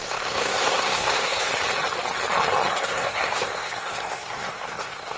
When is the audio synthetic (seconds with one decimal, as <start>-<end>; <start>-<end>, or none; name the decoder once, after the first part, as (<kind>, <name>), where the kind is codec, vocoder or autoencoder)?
0.0-1.5 (codec, SNAC); 2.7-5.2